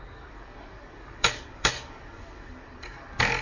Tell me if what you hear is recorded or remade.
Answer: remade